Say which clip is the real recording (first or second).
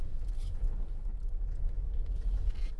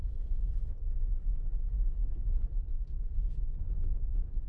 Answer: first